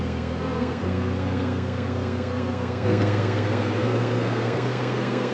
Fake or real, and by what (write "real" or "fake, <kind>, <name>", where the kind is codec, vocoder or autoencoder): fake, codec, SNAC